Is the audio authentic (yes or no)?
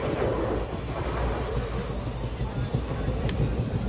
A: yes